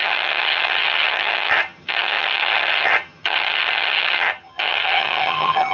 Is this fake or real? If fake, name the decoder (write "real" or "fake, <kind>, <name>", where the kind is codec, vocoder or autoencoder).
fake, vocoder, HiFi-GAN